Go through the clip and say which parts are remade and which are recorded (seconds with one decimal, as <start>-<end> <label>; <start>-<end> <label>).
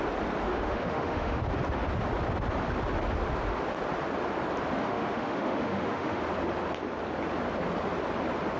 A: 0.0-0.5 recorded; 0.5-1.4 remade; 1.4-4.8 recorded; 4.8-6.2 remade; 6.2-8.6 recorded